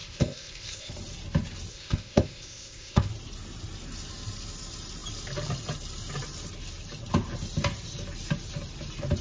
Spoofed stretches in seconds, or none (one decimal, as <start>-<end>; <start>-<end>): 0.0-0.9; 1.7-3.1